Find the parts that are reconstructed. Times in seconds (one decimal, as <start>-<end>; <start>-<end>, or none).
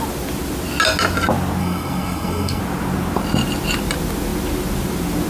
1.6-2.6